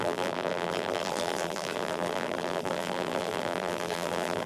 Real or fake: fake